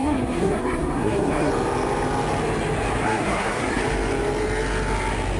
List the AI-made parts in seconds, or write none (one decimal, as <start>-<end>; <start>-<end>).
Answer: 0.0-1.5; 3.0-3.8